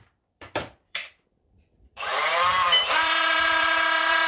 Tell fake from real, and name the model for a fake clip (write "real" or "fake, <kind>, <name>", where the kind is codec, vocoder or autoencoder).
fake, vocoder, BigVGAN v2